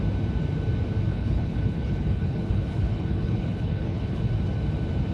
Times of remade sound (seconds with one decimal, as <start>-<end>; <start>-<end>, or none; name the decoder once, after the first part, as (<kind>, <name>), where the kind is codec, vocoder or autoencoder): 1.1-4.2 (codec, HILCodec)